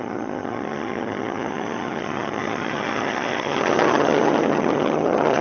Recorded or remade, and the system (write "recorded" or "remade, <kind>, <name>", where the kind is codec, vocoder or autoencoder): remade, vocoder, HiFi-GAN